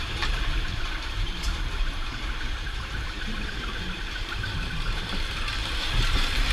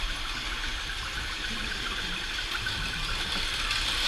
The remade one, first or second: first